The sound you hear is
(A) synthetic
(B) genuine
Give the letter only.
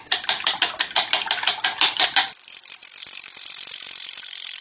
B